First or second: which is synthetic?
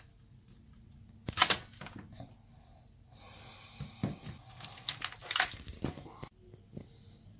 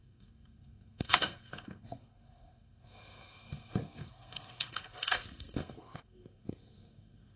second